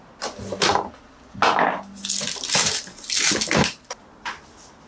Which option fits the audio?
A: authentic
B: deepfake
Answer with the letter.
A